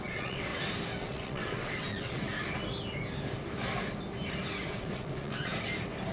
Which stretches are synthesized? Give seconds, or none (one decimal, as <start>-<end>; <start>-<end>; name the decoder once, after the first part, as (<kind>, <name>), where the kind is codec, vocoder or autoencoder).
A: 0.0-0.5 (vocoder, WaveNeXt); 1.0-2.3; 4.7-5.5